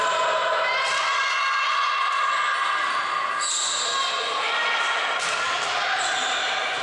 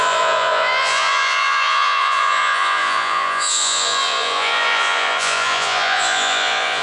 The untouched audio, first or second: first